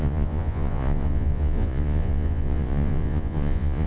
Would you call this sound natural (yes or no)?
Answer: no